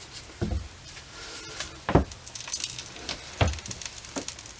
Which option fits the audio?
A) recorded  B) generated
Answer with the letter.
B